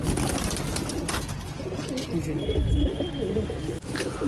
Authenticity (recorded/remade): recorded